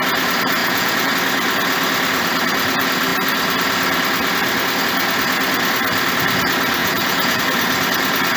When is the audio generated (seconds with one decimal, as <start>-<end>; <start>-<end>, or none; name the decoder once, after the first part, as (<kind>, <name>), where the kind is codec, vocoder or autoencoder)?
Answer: 0.6-1.1 (vocoder, Vocos); 6.8-7.4